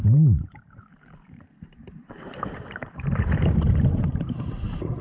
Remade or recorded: remade